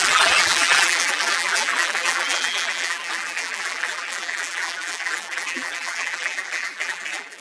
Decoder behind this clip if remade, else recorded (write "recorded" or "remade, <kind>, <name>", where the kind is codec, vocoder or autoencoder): remade, vocoder, BigVGAN v2